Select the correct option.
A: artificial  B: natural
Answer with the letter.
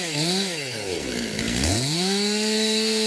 A